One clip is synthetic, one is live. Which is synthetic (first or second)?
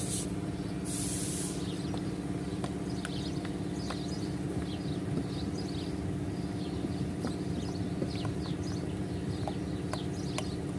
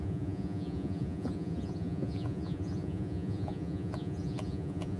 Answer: second